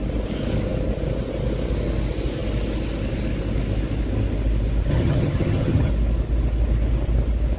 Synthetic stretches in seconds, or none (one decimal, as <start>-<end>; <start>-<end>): 4.9-5.9